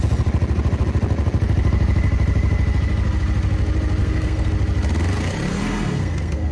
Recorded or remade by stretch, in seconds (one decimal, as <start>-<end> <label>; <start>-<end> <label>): 0.0-4.0 recorded; 4.0-4.5 remade; 4.5-5.5 recorded; 5.5-6.5 remade